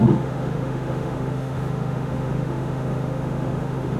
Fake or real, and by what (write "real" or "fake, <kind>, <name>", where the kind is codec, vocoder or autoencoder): fake, autoencoder, DAC-VAE